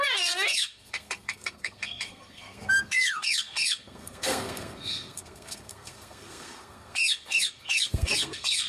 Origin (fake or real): fake